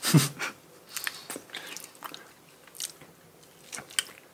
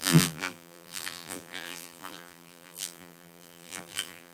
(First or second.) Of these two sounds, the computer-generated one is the second